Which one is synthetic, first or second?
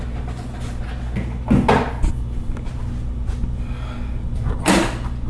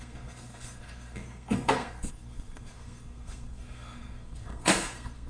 second